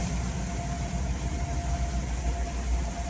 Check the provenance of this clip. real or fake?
real